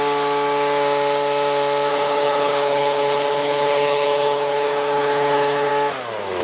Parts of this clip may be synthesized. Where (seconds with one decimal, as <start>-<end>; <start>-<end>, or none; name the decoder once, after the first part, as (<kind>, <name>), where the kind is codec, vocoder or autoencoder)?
1.9-5.7 (codec, HILCodec)